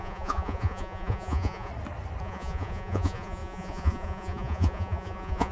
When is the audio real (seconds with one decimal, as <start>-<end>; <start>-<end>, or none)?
1.7-2.2